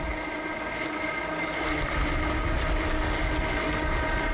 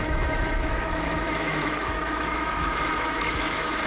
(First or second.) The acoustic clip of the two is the first